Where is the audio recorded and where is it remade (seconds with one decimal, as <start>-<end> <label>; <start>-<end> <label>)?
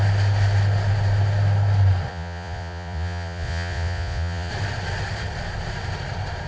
0.0-2.1 recorded; 2.1-4.5 remade; 4.5-6.5 recorded